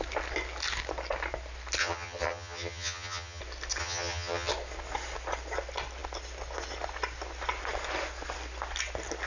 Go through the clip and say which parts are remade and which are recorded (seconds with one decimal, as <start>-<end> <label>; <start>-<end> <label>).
0.0-1.8 recorded; 1.8-3.4 remade; 3.4-3.8 recorded; 3.8-4.5 remade; 4.5-9.3 recorded